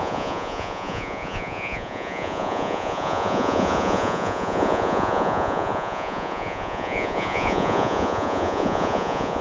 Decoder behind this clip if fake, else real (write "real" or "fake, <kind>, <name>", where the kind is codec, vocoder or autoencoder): fake, vocoder, Vocos